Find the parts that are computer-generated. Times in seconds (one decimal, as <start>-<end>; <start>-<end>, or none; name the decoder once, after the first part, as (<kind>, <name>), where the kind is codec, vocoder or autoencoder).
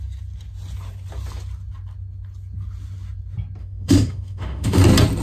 3.6-4.8 (autoencoder, DAC-VAE)